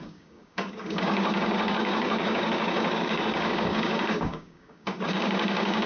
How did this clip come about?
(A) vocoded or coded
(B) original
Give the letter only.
A